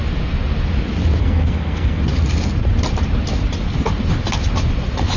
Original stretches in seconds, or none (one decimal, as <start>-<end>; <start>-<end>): 0.0-1.2; 2.0-5.2